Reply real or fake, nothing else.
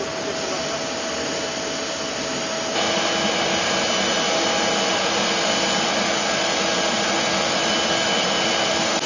real